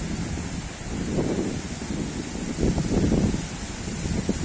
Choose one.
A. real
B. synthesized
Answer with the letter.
A